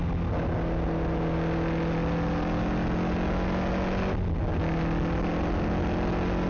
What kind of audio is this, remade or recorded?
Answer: recorded